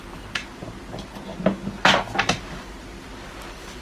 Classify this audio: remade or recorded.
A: recorded